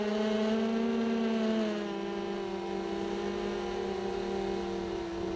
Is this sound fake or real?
real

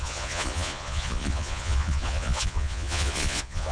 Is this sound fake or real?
fake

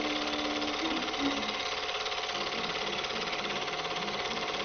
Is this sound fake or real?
real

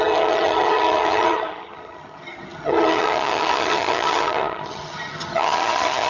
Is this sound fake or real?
fake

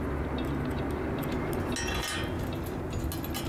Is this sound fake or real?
real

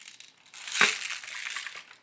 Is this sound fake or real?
real